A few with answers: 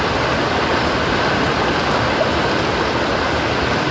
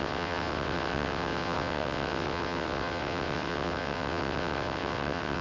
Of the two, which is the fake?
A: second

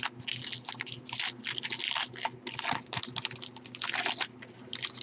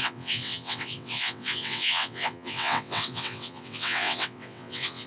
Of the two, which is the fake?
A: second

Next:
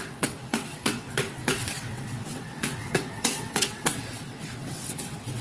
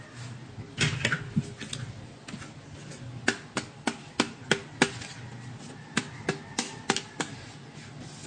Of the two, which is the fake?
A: first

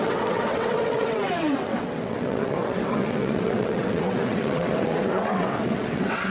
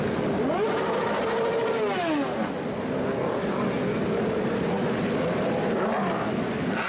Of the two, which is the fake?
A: first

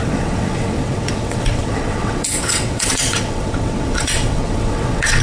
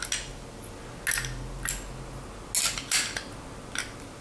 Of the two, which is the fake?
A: first